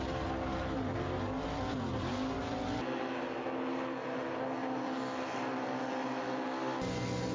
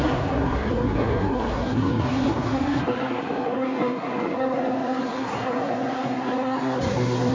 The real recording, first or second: first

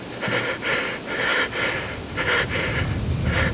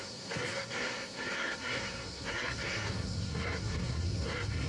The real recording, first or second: first